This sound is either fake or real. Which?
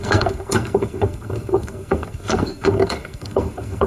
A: fake